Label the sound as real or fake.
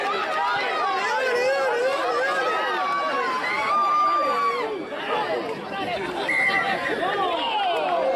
real